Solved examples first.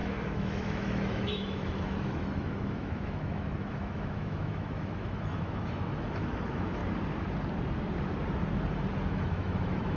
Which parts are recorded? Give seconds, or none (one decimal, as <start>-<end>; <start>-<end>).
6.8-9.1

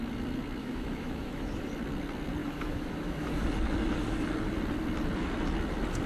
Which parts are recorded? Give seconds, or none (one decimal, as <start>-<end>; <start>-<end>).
0.0-0.6; 1.7-2.4; 3.4-6.1

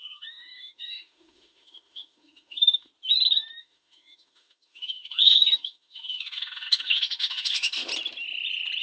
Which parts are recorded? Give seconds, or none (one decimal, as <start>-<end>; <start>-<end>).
2.9-3.6; 7.9-8.8

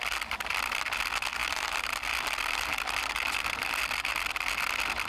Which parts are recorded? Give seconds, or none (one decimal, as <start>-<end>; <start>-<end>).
0.0-5.1

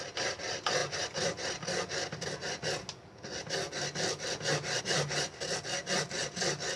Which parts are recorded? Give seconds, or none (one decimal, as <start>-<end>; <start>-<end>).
0.0-6.8

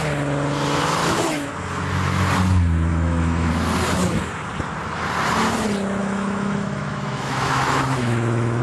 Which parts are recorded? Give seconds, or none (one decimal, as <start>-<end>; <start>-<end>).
0.0-1.0; 1.5-2.9; 3.5-6.0

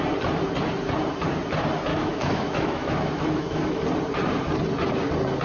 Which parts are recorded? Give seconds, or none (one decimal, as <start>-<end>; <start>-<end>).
0.0-1.9; 3.8-5.4